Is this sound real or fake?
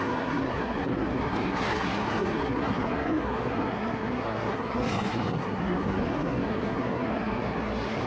fake